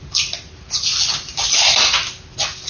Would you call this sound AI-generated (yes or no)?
no